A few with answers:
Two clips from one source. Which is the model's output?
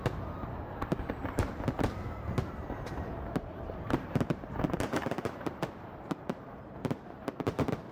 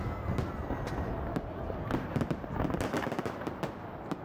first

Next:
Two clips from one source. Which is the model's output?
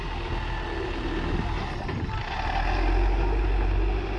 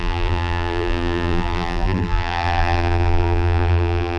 second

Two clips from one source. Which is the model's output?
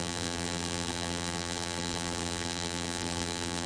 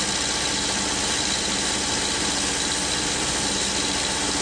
first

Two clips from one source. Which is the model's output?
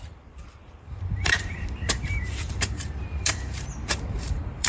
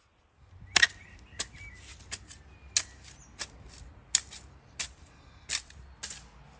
first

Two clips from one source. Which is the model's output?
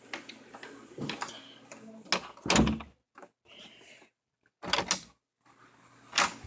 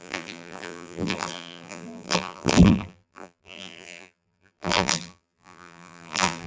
second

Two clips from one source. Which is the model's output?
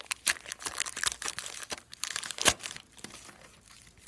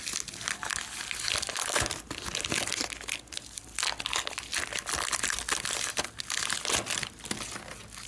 first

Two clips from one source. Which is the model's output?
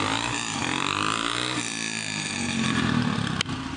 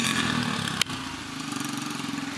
first